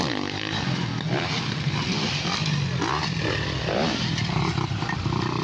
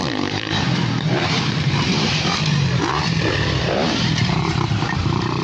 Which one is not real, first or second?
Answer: second